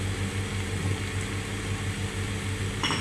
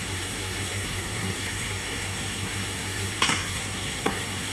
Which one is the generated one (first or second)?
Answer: second